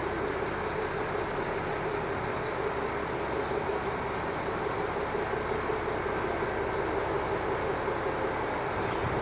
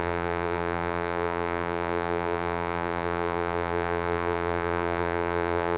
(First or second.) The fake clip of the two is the second